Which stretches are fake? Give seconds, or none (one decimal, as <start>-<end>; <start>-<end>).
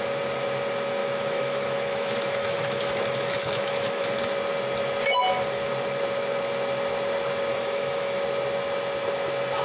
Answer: 1.0-4.1; 7.5-8.2